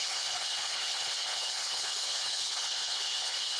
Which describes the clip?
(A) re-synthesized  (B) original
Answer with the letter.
A